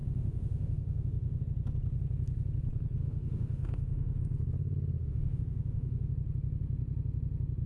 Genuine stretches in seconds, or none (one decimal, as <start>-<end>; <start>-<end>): 1.4-3.0; 4.2-5.0; 6.1-7.7